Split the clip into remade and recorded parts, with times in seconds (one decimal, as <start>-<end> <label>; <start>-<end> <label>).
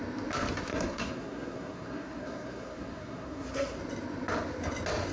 0.0-0.7 recorded; 0.7-3.8 remade; 3.8-5.1 recorded